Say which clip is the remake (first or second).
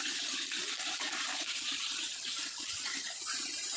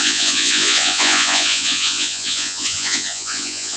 second